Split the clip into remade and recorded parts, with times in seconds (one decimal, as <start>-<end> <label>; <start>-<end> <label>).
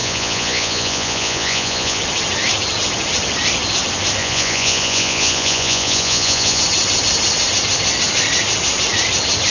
0.0-2.0 remade; 2.0-4.2 recorded; 4.2-6.6 remade; 6.6-9.5 recorded